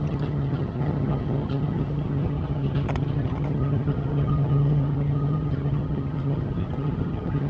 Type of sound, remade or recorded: remade